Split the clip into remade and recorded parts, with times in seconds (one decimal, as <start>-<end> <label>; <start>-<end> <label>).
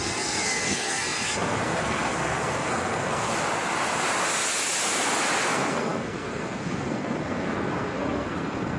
0.0-3.3 remade; 3.3-5.5 recorded; 5.5-8.8 remade